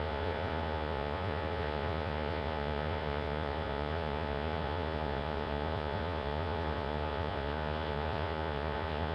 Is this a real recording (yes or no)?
no